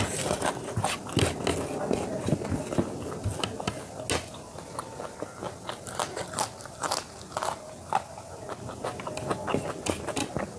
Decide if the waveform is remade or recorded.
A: recorded